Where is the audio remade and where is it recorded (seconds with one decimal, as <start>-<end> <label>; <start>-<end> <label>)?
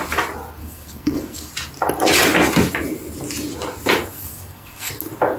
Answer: 0.0-0.6 recorded; 0.6-1.5 remade; 1.5-4.1 recorded; 4.1-4.9 remade; 4.9-5.4 recorded